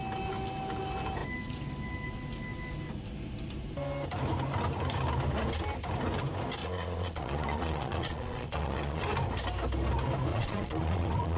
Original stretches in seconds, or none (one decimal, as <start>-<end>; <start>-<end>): 0.0-6.6; 9.0-10.3

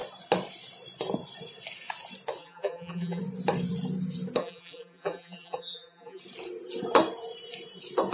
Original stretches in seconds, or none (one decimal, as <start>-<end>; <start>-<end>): 0.0-2.4; 3.2-4.4; 6.2-8.1

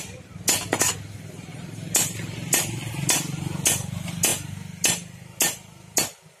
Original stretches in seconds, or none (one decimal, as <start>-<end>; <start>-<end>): 0.0-1.5; 2.9-6.4